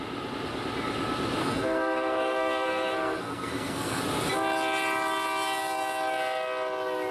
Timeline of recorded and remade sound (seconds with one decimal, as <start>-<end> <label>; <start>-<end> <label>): 0.0-1.4 recorded; 1.4-4.0 remade; 4.0-7.1 recorded

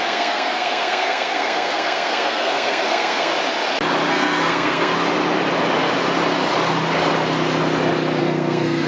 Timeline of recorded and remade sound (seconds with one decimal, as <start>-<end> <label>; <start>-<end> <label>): 0.0-3.3 remade; 3.3-4.1 recorded; 4.1-4.9 remade; 4.9-8.2 recorded; 8.2-8.9 remade

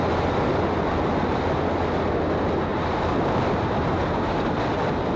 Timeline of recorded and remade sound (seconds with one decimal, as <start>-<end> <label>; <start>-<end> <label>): 0.0-2.7 recorded; 2.7-4.6 remade; 4.6-5.2 recorded

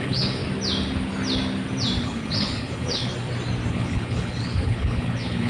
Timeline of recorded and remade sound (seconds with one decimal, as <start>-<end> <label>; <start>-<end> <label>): 0.0-0.4 remade; 0.4-2.0 recorded; 2.0-3.1 remade; 3.1-3.7 recorded; 3.7-5.5 remade

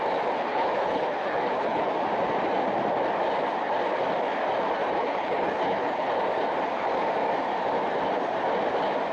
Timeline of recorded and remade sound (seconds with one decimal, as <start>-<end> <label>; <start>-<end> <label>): 0.0-0.5 recorded; 0.5-1.9 remade; 1.9-4.8 recorded; 4.8-6.1 remade; 6.1-9.1 recorded

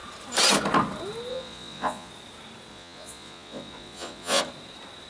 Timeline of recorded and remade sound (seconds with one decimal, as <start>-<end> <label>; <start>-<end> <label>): 0.0-1.3 recorded; 1.3-2.1 remade; 2.1-2.7 recorded; 2.7-4.4 remade; 4.4-5.1 recorded